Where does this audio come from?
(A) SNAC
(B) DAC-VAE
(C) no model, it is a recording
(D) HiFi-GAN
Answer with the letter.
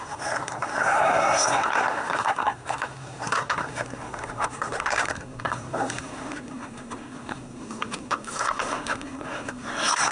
A